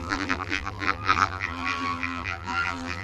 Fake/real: fake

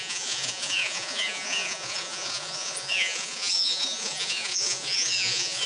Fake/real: fake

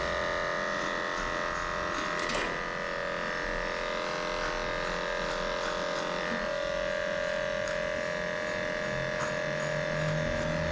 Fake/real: real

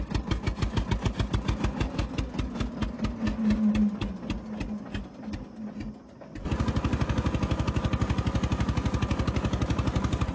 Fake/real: real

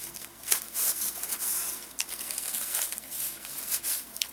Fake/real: fake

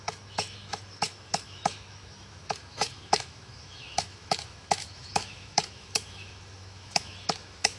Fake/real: fake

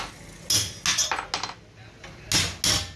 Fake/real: real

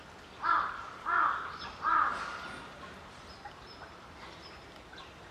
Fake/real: real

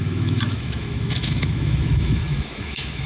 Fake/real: fake